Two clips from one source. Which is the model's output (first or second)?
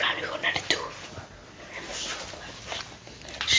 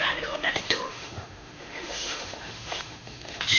second